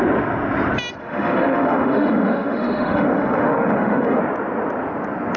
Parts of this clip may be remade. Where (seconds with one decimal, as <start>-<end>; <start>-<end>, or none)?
1.0-4.2